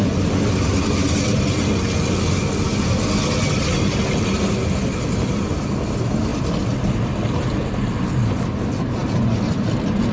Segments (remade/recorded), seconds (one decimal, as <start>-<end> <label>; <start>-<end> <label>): 0.0-10.1 recorded